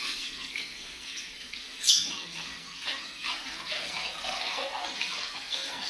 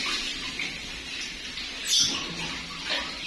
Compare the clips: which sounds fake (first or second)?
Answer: first